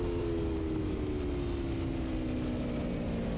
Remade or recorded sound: recorded